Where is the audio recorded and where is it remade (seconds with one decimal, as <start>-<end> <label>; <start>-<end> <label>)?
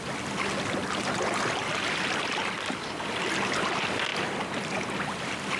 0.0-5.6 recorded